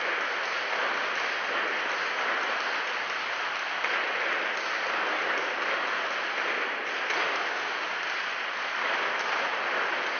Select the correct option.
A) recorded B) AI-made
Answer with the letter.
A